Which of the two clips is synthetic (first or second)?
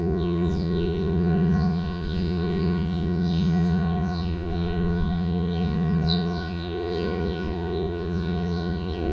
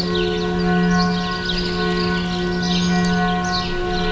first